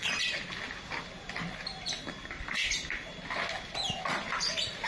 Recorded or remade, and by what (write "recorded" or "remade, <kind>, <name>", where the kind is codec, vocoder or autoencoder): recorded